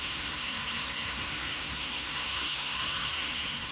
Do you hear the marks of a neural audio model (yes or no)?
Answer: yes